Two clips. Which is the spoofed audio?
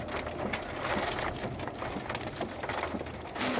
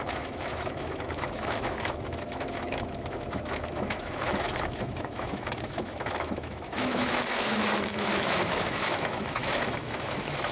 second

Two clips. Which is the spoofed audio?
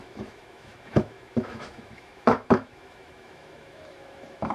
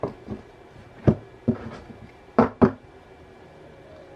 first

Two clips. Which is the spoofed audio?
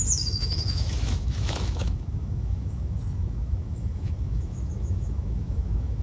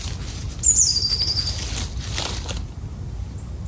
first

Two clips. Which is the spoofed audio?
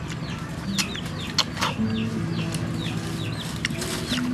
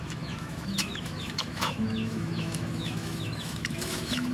second